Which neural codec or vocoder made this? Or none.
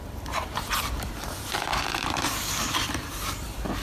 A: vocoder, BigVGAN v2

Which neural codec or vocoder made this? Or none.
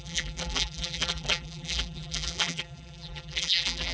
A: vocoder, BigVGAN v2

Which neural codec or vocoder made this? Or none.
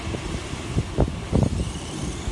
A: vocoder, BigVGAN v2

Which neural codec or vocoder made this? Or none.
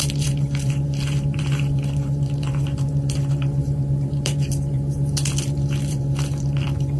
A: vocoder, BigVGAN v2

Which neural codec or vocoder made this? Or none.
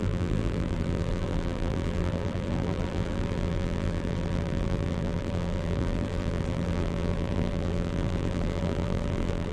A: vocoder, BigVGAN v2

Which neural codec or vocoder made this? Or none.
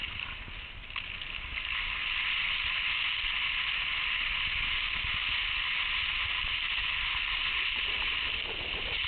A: none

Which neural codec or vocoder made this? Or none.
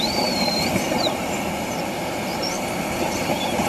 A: vocoder, BigVGAN v2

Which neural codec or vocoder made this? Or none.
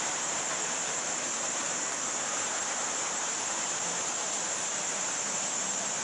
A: vocoder, BigVGAN v2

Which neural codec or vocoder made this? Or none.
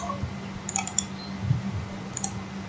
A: none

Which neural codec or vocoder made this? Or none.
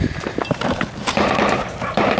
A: vocoder, BigVGAN v2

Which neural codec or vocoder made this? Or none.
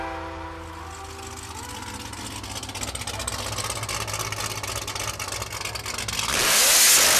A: none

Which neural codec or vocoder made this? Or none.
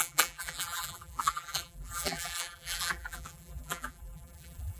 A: vocoder, BigVGAN v2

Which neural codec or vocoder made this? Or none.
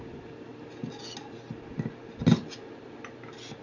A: none